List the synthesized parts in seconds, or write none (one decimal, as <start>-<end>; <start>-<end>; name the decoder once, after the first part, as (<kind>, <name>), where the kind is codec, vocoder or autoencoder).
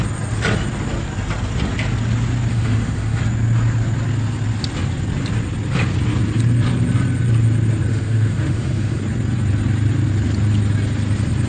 2.5-3.2 (autoencoder, DAC-VAE); 7.9-9.0